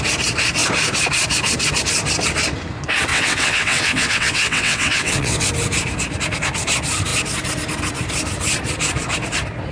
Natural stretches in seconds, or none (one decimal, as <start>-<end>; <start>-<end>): 0.0-3.1; 5.5-9.7